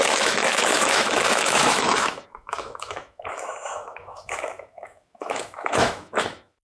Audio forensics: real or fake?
fake